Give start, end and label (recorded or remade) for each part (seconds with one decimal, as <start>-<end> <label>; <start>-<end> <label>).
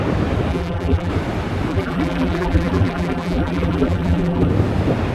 0.0-0.5 recorded; 0.5-1.1 remade; 1.1-1.7 recorded; 1.7-4.5 remade; 4.5-5.1 recorded